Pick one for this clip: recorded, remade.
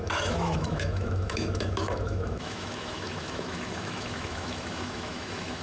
remade